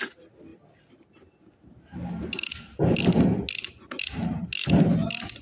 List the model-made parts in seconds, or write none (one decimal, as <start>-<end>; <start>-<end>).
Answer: none